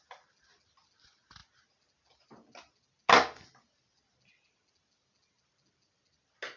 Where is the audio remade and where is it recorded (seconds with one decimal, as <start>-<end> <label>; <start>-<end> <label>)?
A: 0.0-6.6 recorded